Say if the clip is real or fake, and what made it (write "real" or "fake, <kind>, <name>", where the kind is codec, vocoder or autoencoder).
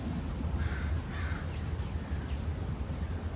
real